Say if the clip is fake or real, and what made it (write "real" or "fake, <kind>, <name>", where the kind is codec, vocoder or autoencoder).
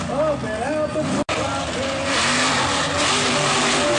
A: real